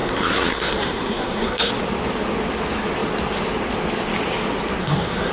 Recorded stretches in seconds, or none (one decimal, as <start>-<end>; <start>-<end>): 1.7-4.8